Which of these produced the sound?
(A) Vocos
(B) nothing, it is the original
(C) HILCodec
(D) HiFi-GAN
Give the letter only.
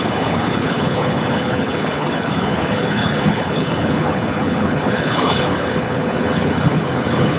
C